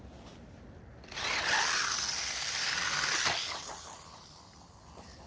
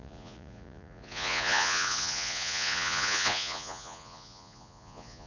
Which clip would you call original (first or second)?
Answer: first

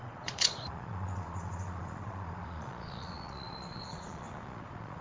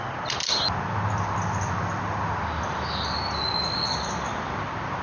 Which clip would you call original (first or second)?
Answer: second